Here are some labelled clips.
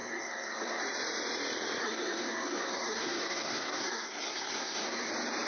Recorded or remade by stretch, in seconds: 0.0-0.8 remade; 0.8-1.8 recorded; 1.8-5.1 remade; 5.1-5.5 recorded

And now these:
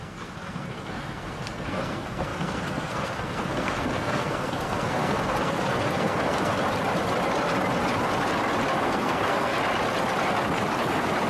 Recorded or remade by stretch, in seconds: 0.0-6.5 remade; 6.5-8.8 recorded; 8.8-9.5 remade; 9.5-11.3 recorded

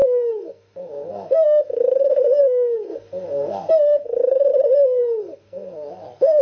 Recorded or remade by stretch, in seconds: 0.0-4.5 remade; 4.5-5.0 recorded; 5.0-6.4 remade

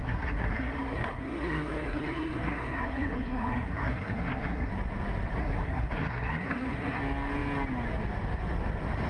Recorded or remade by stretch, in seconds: 0.0-4.7 remade; 4.7-5.4 recorded; 5.4-7.0 remade; 7.0-9.1 recorded

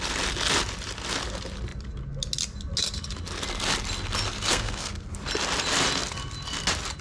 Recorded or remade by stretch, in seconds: 0.0-4.5 recorded; 4.5-5.1 remade; 5.1-7.0 recorded

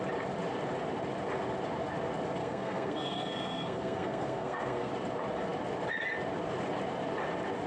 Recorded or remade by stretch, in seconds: 0.0-2.4 recorded; 2.4-4.9 remade; 4.9-7.7 recorded

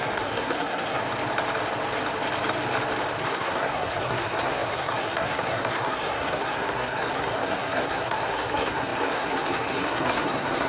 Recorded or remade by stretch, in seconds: 0.0-1.0 remade; 1.0-3.2 recorded; 3.2-10.7 remade

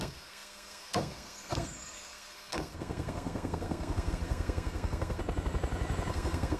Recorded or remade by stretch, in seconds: 0.0-5.2 remade; 5.2-6.1 recorded; 6.1-6.6 remade